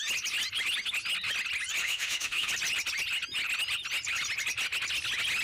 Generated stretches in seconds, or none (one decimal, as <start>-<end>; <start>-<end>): 1.8-2.5